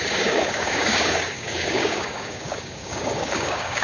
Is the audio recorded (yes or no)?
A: no